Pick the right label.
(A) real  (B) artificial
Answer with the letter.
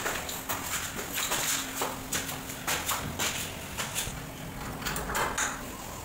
A